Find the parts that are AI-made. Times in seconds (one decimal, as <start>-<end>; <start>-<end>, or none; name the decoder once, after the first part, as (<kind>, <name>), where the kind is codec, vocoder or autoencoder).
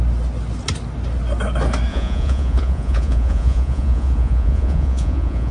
1.9-5.5 (vocoder, Vocos)